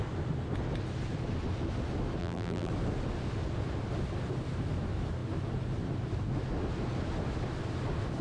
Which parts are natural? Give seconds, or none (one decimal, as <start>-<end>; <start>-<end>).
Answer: 0.0-2.2; 2.7-8.2